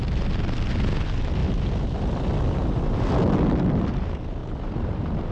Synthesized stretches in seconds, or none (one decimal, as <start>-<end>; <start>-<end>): none